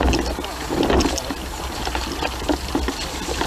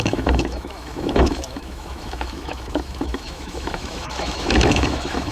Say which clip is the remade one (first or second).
second